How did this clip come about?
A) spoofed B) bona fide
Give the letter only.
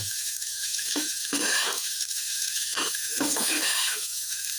A